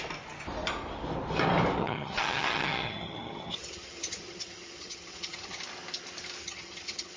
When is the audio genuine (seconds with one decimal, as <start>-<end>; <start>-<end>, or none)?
0.0-1.8; 5.6-6.4